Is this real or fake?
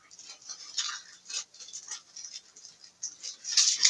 real